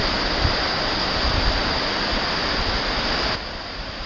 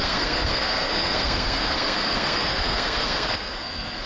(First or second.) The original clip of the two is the first